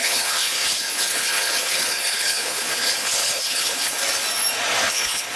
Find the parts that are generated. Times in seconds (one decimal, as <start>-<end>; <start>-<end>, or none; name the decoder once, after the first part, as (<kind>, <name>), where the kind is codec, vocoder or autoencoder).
0.0-4.0 (codec, HILCodec); 4.8-5.4